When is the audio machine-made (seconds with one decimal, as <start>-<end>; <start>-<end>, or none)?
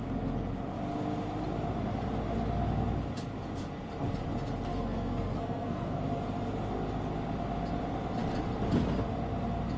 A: 4.7-6.0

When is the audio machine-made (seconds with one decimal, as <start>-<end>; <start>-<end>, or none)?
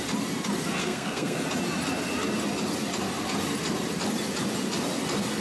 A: 0.8-1.4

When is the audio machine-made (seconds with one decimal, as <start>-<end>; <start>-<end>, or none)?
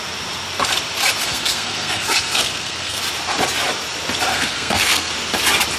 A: 1.2-3.0; 4.3-5.1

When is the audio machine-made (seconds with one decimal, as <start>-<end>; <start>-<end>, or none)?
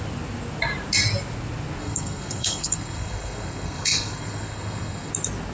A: 1.8-5.1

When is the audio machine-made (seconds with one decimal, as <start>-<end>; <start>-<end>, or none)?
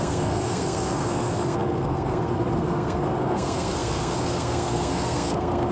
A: 0.0-5.7